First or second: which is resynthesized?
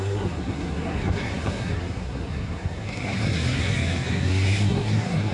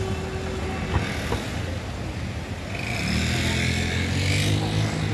first